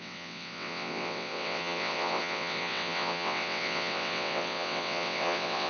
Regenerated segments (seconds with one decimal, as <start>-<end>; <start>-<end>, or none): 0.0-5.7